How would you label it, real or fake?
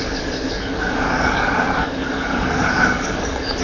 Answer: fake